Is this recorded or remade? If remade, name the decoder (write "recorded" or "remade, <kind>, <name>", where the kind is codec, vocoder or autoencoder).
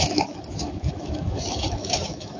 remade, autoencoder, DAC-VAE